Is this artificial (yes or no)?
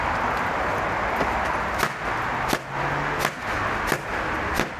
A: no